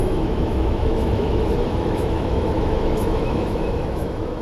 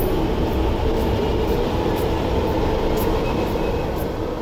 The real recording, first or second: second